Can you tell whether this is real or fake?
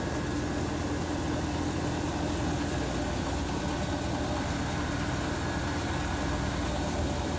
real